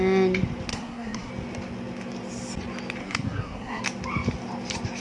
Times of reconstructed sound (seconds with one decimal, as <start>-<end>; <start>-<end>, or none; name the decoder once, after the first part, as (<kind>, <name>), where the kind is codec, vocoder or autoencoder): 0.7-1.3 (codec, SNAC); 3.0-3.8